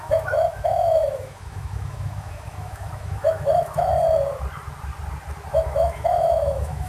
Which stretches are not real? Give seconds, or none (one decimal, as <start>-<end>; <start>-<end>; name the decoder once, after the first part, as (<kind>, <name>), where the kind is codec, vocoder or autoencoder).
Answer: 0.0-3.9 (autoencoder, DAC-VAE); 5.5-6.9